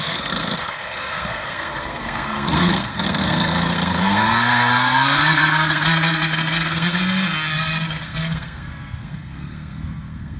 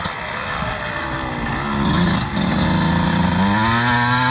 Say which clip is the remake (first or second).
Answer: first